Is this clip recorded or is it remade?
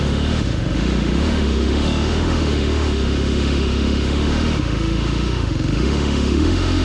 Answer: remade